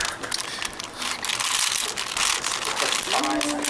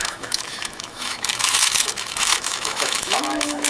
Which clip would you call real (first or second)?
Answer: first